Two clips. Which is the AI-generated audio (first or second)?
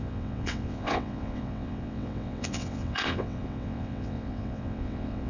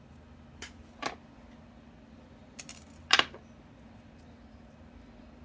first